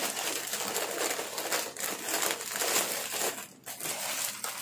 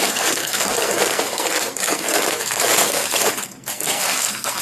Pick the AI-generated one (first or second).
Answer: second